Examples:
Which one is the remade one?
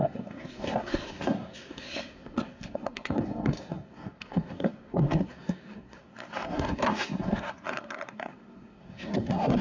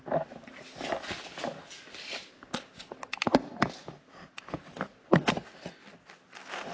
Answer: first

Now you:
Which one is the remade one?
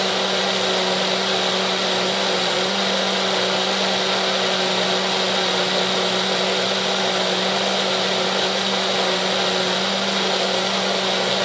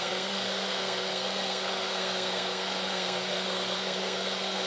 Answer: second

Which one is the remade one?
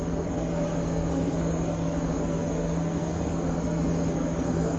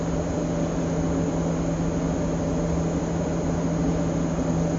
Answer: first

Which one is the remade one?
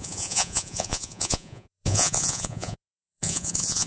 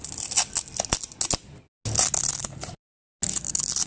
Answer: first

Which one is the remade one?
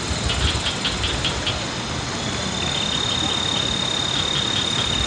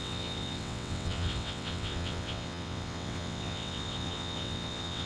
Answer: second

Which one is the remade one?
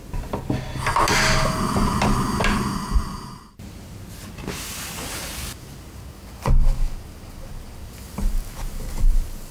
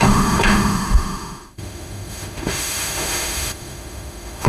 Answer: second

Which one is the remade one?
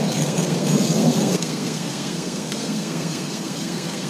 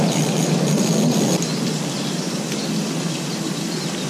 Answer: first